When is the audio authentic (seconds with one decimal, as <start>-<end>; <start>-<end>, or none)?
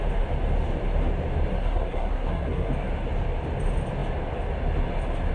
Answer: 0.0-1.5; 2.7-5.3